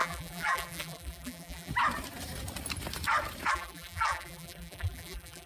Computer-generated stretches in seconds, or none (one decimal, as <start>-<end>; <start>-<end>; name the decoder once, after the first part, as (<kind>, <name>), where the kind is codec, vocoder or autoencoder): 0.0-1.7 (vocoder, BigVGAN v2); 3.5-5.5

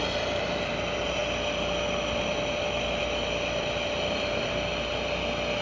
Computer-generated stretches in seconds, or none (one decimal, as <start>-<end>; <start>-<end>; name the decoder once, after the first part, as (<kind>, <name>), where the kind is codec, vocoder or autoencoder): none

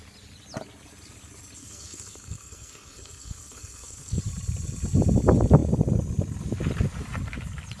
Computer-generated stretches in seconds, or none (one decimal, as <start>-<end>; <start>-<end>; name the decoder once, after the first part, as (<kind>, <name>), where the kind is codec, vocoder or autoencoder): 1.6-4.2 (codec, SNAC)

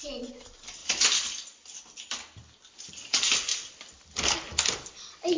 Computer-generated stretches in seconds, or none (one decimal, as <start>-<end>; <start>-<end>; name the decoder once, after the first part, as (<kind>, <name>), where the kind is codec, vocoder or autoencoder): none

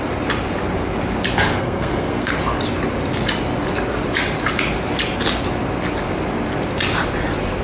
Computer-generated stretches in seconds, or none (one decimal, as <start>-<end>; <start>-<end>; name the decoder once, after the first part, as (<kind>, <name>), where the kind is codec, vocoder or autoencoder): 1.5-2.4 (codec, SNAC)

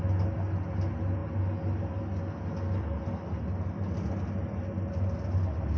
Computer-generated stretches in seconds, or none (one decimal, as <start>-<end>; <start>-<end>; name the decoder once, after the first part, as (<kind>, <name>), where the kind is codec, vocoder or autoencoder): none

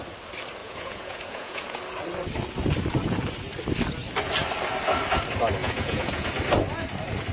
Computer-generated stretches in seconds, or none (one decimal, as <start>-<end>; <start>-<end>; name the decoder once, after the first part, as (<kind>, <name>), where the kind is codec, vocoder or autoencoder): 0.6-1.8 (vocoder, Vocos); 5.6-6.3